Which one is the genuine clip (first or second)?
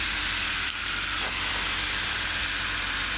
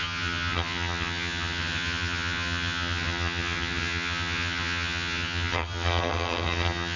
first